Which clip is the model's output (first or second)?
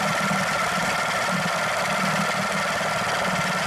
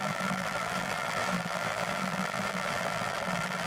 second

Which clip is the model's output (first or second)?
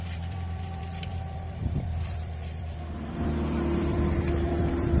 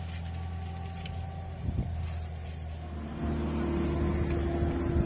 first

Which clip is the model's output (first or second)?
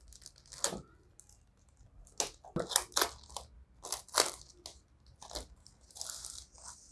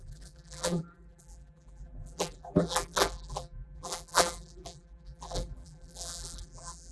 second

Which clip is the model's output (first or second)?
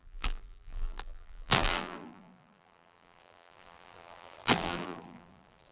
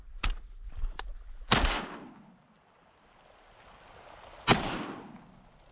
first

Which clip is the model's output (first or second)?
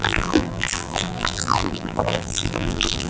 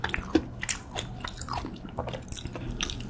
first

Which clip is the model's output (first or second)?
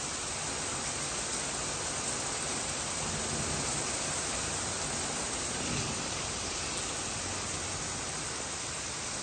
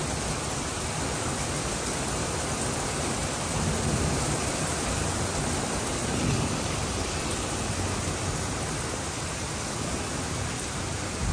second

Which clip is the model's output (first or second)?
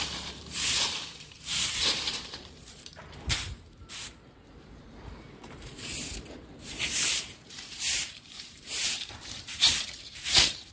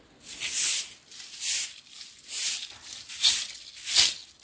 first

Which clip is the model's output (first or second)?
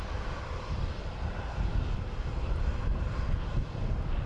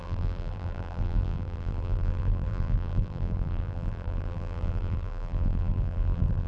second